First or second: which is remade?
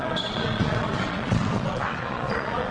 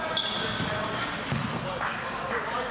first